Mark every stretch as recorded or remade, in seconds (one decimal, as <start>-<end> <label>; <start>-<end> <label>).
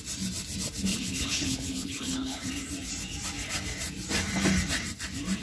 0.0-0.9 recorded; 0.9-2.5 remade; 2.5-5.4 recorded